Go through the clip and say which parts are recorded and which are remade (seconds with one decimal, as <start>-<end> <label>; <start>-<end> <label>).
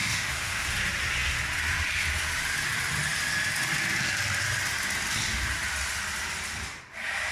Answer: 0.0-0.7 remade; 0.7-7.3 recorded